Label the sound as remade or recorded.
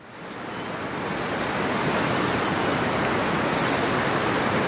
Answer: recorded